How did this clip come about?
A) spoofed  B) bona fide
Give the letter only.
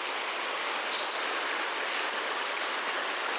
B